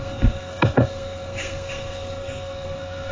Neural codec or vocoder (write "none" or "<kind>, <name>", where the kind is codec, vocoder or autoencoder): codec, SNAC